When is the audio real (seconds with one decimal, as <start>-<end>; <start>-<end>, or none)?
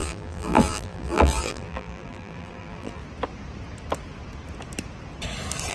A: 3.0-5.7